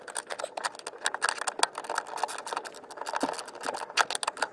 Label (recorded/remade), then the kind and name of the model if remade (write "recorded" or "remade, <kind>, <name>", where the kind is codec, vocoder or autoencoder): recorded